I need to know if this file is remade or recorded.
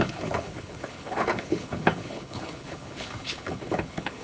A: remade